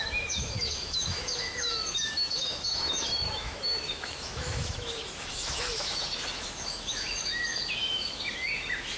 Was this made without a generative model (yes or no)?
no